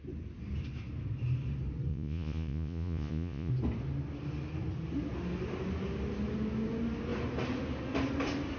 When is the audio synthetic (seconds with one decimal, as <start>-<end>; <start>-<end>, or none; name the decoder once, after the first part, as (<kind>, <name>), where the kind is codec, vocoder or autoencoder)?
1.9-3.5 (vocoder, Vocos)